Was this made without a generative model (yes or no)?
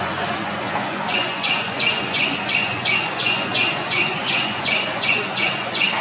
no